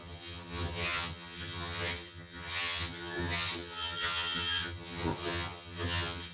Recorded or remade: remade